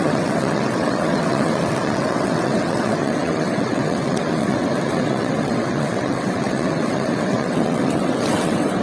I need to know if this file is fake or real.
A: fake